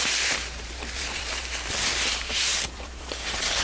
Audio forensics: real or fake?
fake